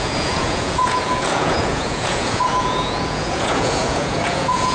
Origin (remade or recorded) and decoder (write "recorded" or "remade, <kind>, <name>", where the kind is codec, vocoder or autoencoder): remade, vocoder, Vocos